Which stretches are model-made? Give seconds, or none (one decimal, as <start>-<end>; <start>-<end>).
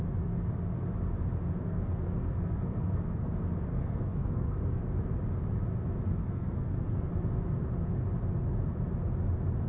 1.6-3.3; 3.7-4.8; 6.2-7.1